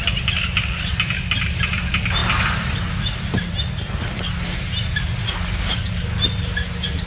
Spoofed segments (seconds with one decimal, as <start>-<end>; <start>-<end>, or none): none